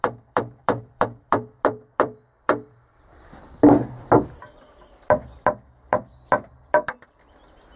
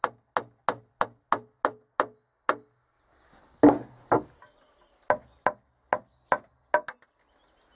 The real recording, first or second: second